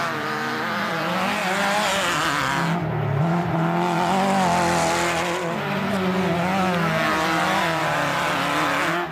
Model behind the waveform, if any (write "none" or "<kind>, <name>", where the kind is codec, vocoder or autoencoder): none